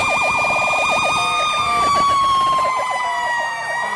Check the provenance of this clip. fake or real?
fake